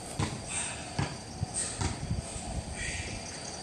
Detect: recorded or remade recorded